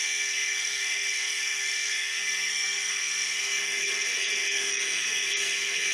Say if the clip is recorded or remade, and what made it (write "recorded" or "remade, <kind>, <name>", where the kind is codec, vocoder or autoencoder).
remade, codec, SNAC